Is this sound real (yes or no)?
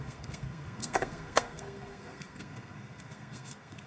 no